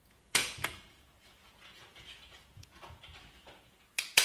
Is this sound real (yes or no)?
no